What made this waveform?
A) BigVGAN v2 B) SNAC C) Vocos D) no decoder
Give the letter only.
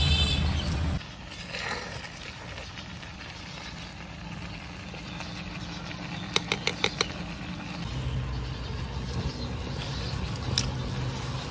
D